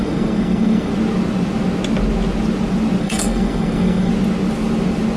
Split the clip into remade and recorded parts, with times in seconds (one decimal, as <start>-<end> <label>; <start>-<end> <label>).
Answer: 0.0-0.9 remade; 0.9-3.0 recorded; 3.0-4.1 remade; 4.1-5.2 recorded